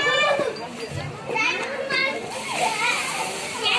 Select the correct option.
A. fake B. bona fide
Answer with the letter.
B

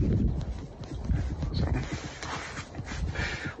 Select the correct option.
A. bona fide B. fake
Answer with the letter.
A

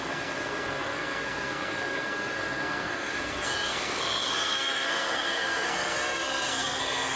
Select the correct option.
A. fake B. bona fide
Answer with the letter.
A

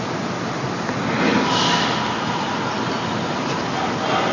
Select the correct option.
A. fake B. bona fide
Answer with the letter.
B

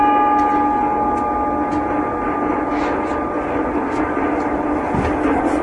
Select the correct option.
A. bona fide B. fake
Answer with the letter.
A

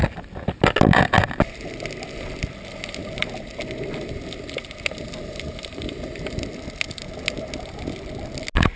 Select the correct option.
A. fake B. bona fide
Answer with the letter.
B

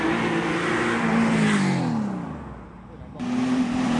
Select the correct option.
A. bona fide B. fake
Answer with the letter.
A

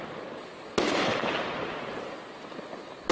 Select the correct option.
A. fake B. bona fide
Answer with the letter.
B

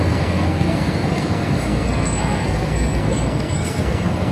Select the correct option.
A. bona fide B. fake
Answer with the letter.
B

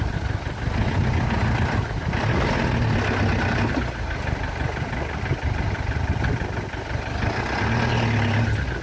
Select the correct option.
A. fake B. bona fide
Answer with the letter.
B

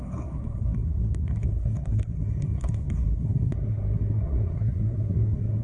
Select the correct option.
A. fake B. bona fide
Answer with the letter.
A